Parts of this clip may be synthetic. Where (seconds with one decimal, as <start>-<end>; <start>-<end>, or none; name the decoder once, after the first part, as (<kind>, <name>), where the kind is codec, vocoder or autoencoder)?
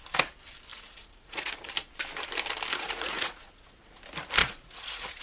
0.7-1.7 (vocoder, Vocos); 2.7-4.0; 4.4-5.2